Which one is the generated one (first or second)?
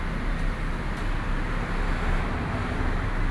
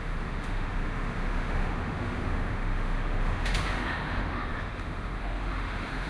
second